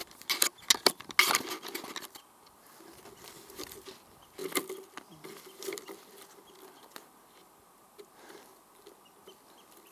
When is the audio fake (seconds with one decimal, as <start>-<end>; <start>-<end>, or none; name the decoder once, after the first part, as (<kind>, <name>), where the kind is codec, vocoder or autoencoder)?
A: none